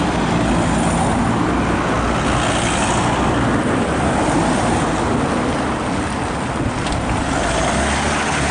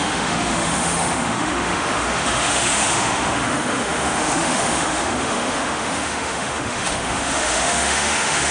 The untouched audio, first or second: first